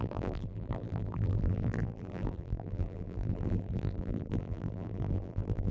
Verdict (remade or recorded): remade